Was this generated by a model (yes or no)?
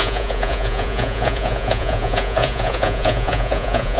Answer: yes